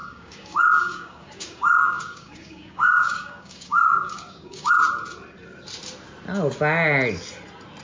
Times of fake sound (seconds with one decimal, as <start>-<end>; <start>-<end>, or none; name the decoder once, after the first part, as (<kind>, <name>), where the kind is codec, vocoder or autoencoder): 0.0-4.7 (codec, DAC)